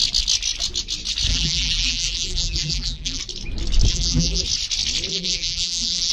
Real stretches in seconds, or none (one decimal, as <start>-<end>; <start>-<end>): 0.0-1.3; 3.2-3.9; 4.4-5.1